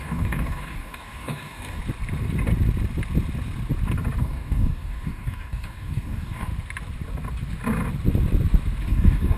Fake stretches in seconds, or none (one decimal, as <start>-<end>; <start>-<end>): 0.0-1.8; 4.2-6.5; 8.8-9.4